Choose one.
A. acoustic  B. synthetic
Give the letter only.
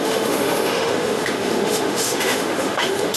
B